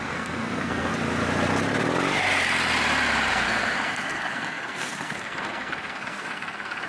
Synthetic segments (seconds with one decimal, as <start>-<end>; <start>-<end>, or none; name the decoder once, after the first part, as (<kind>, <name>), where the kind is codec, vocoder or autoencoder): 0.0-0.9 (codec, SNAC); 3.3-6.9